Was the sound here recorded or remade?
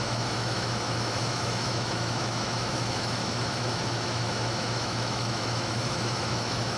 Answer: remade